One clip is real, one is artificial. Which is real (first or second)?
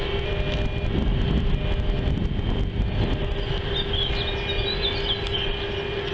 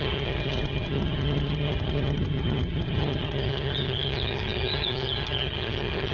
first